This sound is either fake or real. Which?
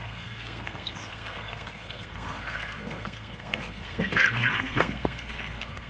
fake